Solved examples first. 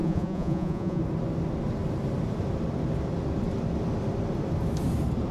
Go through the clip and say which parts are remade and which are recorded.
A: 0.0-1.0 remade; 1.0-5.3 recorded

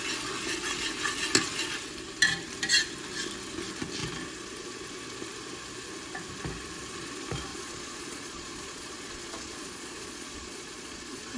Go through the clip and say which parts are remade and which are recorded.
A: 0.0-7.5 recorded; 7.5-11.4 remade

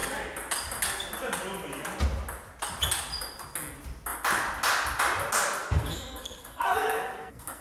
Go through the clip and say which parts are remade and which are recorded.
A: 0.0-5.6 recorded; 5.6-7.6 remade

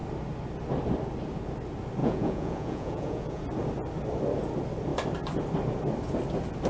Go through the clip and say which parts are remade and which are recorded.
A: 0.0-2.0 recorded; 2.0-3.4 remade; 3.4-6.7 recorded

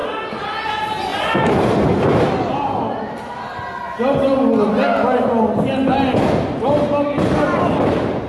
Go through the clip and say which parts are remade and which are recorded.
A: 0.0-8.3 recorded